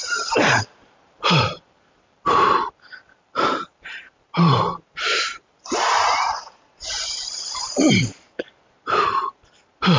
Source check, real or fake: fake